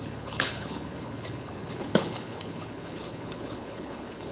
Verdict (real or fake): fake